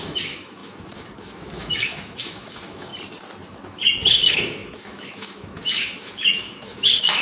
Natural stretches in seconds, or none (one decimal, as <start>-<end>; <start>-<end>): 2.9-3.5